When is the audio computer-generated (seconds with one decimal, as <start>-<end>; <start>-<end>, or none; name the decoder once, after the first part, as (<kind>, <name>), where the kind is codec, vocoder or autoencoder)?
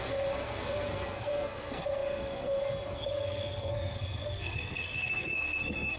0.0-6.0 (codec, SNAC)